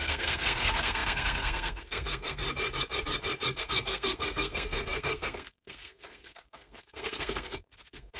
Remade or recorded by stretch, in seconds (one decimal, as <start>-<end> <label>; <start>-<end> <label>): 0.0-2.4 remade; 2.4-3.6 recorded; 3.6-8.2 remade